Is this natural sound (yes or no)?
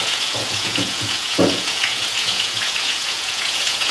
no